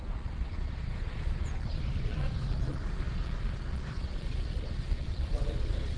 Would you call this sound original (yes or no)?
no